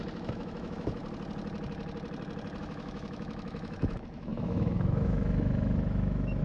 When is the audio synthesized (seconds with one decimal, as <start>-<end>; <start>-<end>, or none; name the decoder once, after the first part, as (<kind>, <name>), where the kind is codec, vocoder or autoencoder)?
0.0-1.0 (autoencoder, DAC-VAE); 2.6-6.4